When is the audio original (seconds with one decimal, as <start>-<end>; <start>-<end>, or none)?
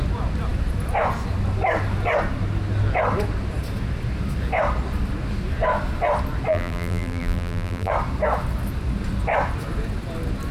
0.0-6.5; 7.9-10.5